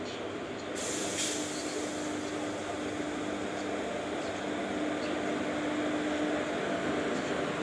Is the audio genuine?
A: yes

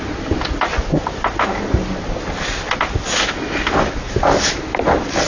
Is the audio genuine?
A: yes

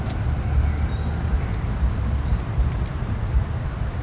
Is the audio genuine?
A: yes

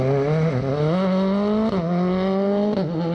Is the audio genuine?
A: yes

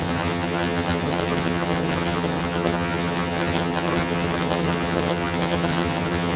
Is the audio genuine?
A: no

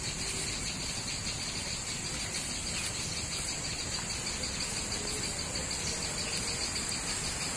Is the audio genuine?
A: yes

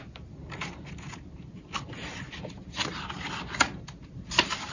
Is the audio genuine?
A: yes